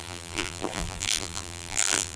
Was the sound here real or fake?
fake